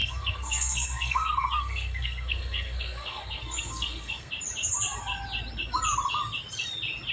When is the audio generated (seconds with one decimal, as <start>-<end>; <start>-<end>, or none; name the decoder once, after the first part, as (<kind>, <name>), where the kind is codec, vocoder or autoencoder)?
0.0-4.3 (codec, SNAC)